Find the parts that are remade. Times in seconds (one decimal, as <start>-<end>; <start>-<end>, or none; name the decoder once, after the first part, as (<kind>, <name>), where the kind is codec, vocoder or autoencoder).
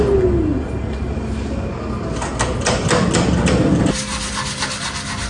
none